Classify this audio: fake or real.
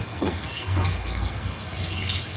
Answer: fake